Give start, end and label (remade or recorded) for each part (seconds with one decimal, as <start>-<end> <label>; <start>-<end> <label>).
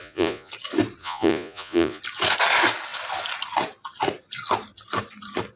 0.0-0.5 remade; 0.5-1.0 recorded; 1.0-2.0 remade; 2.0-5.6 recorded